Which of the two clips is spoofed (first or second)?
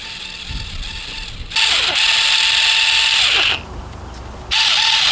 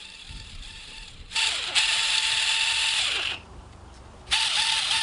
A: second